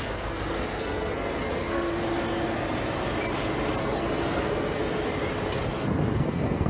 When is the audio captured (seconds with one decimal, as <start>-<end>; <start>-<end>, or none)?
2.0-3.8; 4.8-5.8